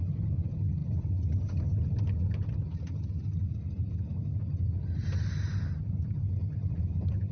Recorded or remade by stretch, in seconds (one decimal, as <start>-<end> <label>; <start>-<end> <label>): 0.0-7.3 recorded